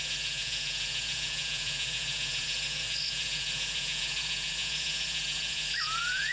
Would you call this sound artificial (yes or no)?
yes